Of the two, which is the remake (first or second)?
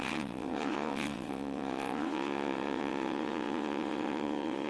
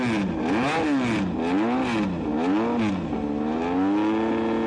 first